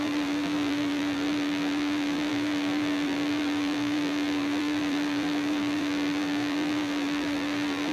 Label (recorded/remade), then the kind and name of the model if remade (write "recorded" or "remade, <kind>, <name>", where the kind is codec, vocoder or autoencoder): remade, vocoder, BigVGAN v2